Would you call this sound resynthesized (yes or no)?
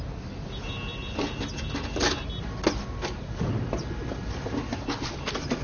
no